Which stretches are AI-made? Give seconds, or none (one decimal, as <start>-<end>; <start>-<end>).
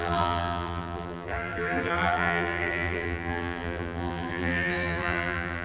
0.0-5.6